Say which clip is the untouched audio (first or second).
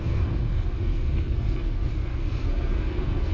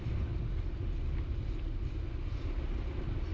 second